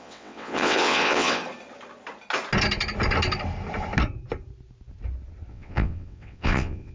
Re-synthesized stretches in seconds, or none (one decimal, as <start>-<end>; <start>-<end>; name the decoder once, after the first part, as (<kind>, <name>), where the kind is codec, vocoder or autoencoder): 0.0-1.4 (vocoder, WaveNeXt); 5.5-6.9